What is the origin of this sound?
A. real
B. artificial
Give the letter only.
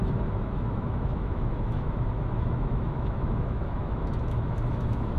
B